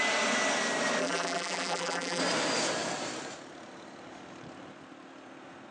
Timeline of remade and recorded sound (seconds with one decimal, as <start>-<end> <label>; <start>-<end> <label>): 0.0-1.0 recorded; 1.0-2.2 remade; 2.2-5.7 recorded